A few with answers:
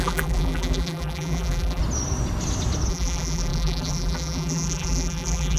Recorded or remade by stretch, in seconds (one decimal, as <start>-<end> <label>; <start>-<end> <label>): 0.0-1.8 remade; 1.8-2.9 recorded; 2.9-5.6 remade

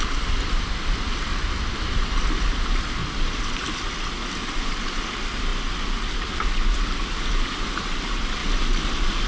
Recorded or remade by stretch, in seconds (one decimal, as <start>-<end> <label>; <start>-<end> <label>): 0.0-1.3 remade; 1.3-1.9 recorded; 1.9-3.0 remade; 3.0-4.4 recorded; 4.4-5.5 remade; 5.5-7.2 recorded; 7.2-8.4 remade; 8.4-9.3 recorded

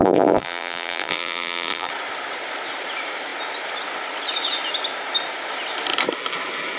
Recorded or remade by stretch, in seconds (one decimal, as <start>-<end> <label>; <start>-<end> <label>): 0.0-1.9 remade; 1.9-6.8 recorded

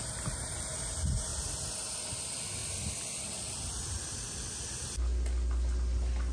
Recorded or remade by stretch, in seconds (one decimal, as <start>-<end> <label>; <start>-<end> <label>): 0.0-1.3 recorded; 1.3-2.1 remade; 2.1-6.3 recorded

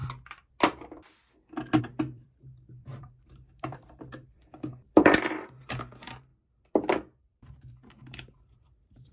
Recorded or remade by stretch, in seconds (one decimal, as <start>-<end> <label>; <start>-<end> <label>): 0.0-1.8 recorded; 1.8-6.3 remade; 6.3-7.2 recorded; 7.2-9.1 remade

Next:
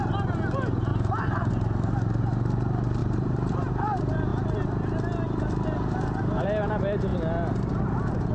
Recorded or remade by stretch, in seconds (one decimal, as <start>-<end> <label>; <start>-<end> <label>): 0.0-0.9 recorded; 0.9-1.5 remade; 1.5-3.0 recorded; 3.0-3.7 remade; 3.7-8.3 recorded

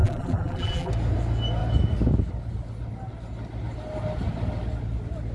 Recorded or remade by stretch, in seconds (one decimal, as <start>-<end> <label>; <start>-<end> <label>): 0.0-0.9 remade; 0.9-5.3 recorded

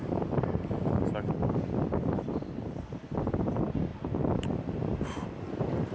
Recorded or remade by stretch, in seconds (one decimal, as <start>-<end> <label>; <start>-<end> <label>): 0.0-5.9 remade